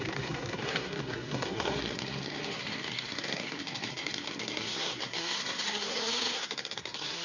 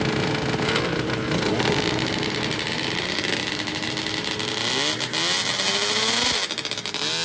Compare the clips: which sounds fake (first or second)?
first